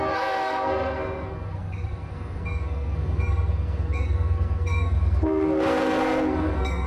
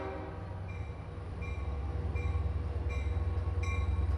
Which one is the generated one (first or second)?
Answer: first